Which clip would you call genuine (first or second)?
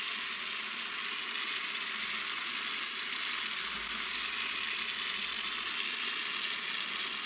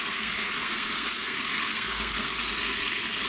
first